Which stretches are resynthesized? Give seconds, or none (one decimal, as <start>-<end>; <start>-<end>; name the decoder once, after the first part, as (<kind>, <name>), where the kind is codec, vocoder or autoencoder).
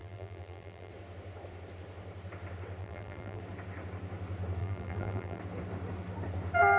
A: 0.0-0.9 (vocoder, BigVGAN v2); 2.8-3.4; 4.6-5.4